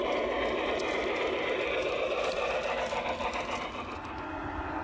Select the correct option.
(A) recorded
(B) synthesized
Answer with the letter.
A